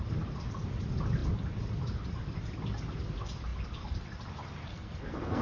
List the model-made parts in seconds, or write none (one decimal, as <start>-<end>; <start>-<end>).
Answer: 4.7-5.4